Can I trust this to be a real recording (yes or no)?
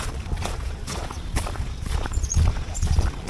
no